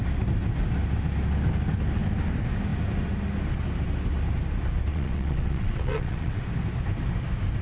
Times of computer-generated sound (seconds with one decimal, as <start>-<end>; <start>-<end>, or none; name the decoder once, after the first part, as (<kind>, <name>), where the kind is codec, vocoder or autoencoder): 4.9-6.4 (vocoder, WaveNeXt)

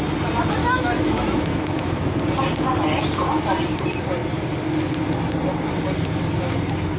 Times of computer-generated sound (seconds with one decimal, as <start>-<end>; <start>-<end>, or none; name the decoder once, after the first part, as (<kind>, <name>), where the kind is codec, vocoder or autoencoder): 0.6-2.1 (autoencoder, DAC-VAE)

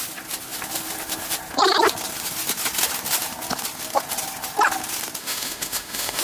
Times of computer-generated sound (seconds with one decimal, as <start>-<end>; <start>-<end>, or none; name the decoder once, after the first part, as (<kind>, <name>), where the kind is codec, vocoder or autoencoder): 5.2-6.2 (autoencoder, DAC-VAE)

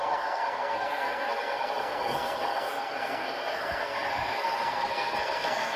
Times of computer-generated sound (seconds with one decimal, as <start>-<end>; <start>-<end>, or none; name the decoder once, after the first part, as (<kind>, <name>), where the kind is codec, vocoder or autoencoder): 0.0-5.8 (codec, SNAC)